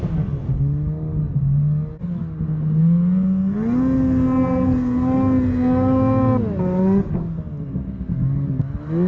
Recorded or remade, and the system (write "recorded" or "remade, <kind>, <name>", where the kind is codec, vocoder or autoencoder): recorded